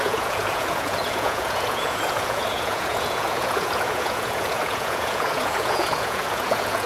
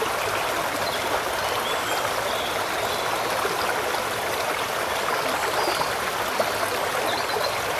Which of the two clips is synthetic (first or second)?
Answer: first